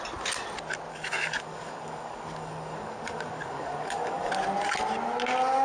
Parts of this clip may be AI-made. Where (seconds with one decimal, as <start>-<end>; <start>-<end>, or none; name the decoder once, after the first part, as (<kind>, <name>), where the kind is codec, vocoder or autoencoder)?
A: 0.9-4.3 (codec, DAC)